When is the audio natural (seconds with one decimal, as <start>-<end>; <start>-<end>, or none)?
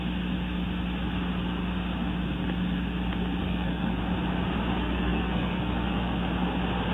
0.0-3.4; 4.0-4.7; 6.2-6.9